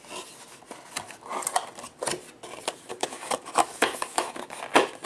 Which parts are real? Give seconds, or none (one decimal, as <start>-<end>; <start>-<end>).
0.0-2.9; 4.6-5.1